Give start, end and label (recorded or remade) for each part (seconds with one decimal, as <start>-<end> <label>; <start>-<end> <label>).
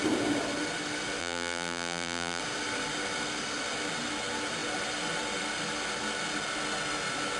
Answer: 0.0-1.2 recorded; 1.2-2.4 remade; 2.4-7.4 recorded